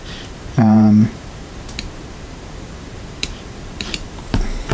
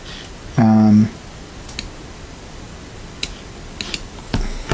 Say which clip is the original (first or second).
second